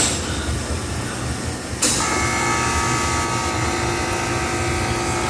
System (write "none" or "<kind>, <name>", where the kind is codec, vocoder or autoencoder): none